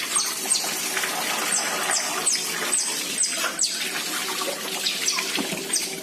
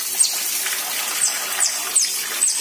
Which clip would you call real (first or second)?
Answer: second